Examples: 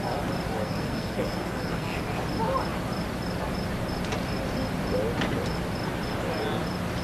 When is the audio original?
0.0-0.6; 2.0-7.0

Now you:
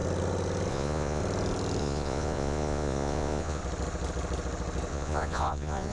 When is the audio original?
0.0-0.7; 1.2-1.8; 3.6-4.9

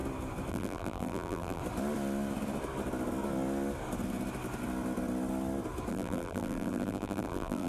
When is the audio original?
0.0-0.5; 1.6-5.9

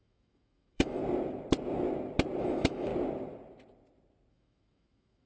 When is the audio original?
1.0-2.4; 2.9-4.3

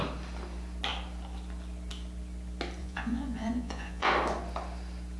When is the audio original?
0.0-2.8; 4.1-5.2